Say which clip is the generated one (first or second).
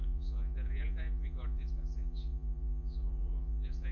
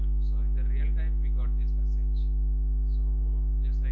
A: first